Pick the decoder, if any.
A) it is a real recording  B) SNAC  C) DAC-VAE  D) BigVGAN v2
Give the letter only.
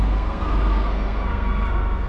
B